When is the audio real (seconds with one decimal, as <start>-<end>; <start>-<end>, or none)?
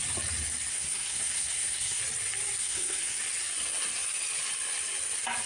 0.0-0.7; 2.0-2.6; 3.2-5.5